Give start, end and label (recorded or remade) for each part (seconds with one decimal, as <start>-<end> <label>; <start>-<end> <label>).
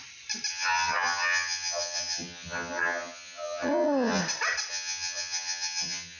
0.0-0.5 recorded; 0.5-4.2 remade; 4.2-4.7 recorded; 4.7-6.2 remade